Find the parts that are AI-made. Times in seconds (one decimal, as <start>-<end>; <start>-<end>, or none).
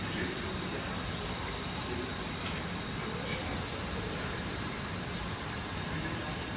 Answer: none